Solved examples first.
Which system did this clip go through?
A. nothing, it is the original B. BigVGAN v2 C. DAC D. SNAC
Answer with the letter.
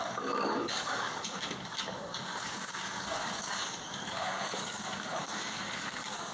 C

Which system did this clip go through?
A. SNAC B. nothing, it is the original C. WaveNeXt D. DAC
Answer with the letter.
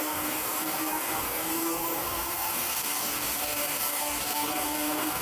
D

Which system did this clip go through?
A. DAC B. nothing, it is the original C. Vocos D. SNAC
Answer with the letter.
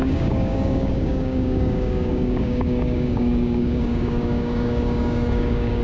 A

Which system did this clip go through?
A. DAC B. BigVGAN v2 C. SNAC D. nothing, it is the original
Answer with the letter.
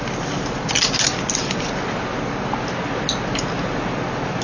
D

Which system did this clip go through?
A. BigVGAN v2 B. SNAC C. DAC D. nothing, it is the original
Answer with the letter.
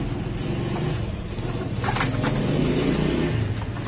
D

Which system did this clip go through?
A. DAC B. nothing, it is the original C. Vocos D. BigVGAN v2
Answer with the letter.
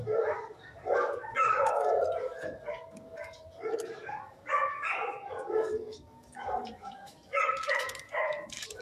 A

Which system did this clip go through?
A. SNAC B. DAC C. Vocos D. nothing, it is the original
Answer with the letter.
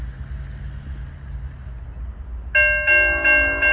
D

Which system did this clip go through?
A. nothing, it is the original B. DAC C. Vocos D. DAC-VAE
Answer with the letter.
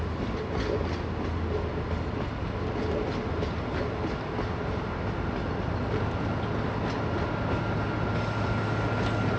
A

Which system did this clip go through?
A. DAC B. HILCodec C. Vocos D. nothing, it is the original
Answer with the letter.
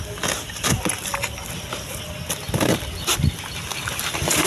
D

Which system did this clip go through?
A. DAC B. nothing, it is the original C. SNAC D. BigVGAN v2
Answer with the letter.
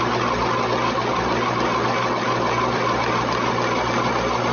B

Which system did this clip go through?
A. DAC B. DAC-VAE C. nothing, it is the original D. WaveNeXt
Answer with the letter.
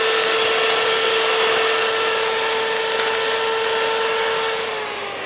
C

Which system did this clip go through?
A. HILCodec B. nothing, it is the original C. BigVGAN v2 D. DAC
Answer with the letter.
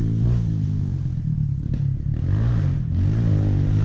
B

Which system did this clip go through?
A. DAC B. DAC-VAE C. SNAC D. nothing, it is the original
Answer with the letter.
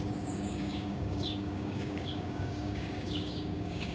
A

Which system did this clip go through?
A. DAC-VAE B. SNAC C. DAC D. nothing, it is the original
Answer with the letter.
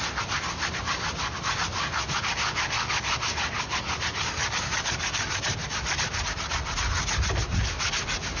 D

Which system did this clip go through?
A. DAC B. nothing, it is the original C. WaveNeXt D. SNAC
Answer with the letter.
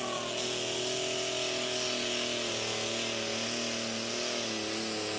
B